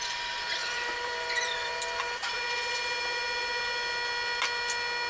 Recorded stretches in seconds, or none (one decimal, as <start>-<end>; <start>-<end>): 0.0-0.6; 2.3-5.1